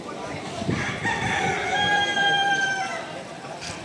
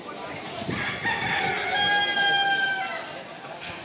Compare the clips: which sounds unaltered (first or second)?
second